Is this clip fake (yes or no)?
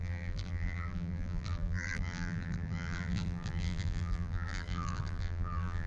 yes